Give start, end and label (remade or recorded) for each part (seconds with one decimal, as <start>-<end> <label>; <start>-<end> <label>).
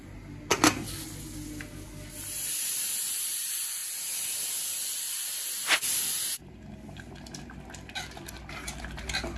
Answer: 0.0-9.4 recorded